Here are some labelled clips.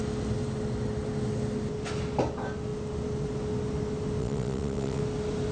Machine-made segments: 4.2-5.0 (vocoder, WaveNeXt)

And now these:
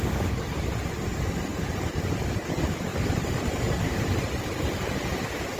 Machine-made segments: 1.5-2.0 (vocoder, BigVGAN v2)

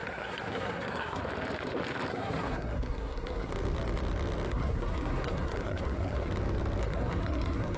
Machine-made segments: 0.0-1.2 (codec, SNAC); 2.1-3.5; 4.5-6.3; 6.8-7.8

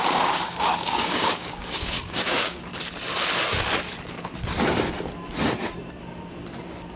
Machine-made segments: 0.0-2.7 (codec, DAC)

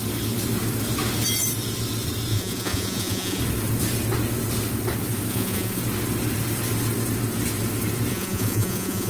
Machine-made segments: 2.3-3.4 (vocoder, Vocos); 5.3-5.8; 8.1-9.1

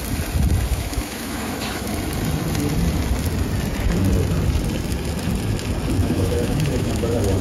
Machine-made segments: 0.7-1.9 (autoencoder, DAC-VAE); 6.0-7.4

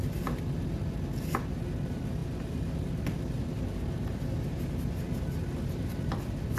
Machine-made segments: none